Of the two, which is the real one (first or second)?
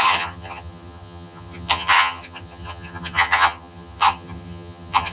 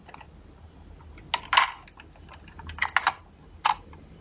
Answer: second